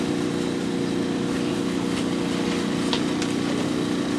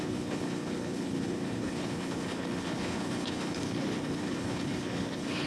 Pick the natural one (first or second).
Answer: first